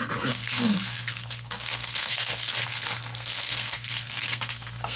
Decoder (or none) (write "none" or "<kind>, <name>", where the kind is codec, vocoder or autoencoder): codec, SNAC